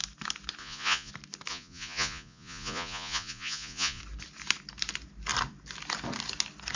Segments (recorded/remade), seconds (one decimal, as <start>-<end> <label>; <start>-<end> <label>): 0.0-0.6 recorded; 0.6-1.1 remade; 1.1-1.5 recorded; 1.5-4.0 remade; 4.0-6.8 recorded